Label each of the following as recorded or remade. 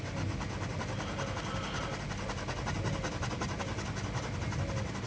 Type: recorded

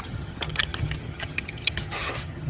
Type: remade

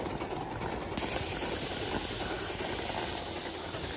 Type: recorded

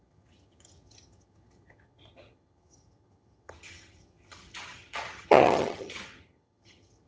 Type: remade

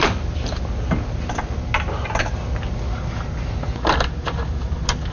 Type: recorded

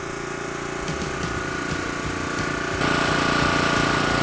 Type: recorded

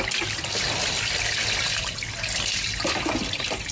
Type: recorded